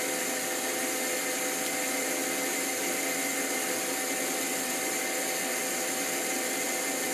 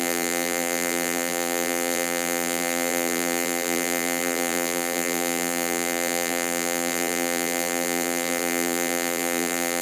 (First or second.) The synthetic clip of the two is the second